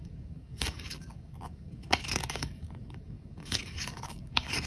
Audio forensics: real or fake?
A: fake